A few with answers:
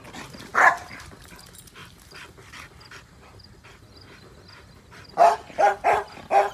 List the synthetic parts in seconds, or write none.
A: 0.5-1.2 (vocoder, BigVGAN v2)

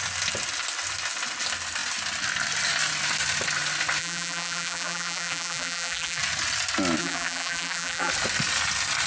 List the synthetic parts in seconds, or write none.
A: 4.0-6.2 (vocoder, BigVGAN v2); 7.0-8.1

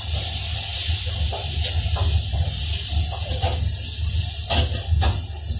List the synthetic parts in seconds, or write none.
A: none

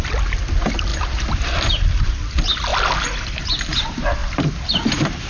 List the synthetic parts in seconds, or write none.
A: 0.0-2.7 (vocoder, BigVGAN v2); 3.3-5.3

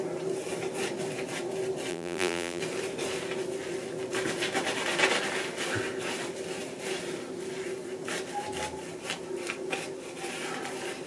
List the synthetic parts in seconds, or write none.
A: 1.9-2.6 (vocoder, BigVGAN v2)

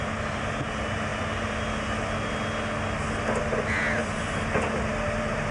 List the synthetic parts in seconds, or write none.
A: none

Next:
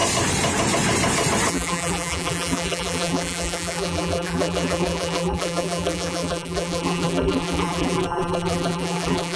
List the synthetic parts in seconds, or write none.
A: 1.5-9.4 (vocoder, BigVGAN v2)

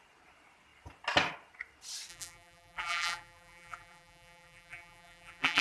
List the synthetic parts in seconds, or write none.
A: 2.1-5.6 (vocoder, BigVGAN v2)